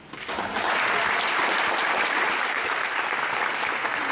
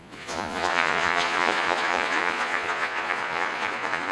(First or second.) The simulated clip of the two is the second